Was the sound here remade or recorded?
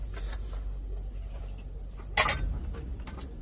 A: recorded